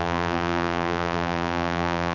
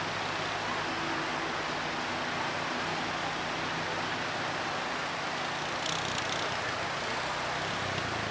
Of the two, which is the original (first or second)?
second